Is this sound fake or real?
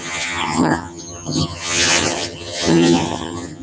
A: fake